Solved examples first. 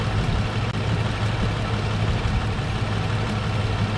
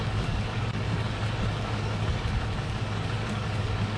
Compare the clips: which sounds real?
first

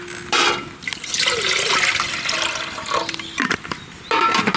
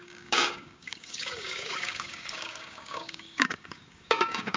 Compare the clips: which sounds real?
first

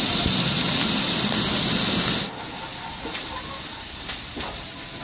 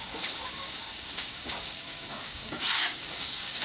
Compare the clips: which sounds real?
first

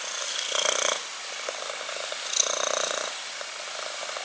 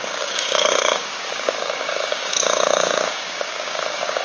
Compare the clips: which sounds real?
first